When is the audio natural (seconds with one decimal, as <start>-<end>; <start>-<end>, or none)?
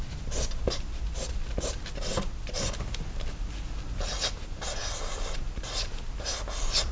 0.0-6.9